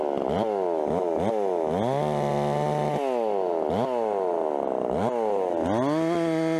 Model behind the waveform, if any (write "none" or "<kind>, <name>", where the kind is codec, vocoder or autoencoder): none